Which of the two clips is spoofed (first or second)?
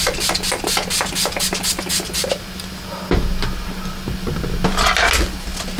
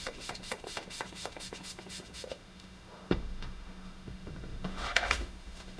second